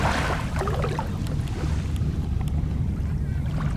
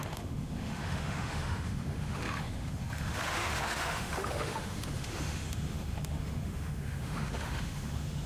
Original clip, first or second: first